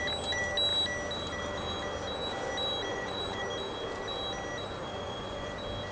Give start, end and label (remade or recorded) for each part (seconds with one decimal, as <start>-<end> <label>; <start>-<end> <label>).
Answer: 0.0-2.9 recorded; 2.9-3.4 remade; 3.4-4.9 recorded; 4.9-5.5 remade; 5.5-5.9 recorded